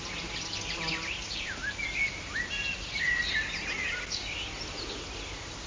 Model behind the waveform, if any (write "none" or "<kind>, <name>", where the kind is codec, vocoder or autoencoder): none